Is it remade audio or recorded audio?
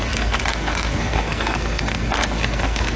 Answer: remade